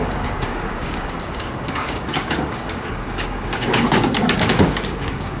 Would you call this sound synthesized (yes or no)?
yes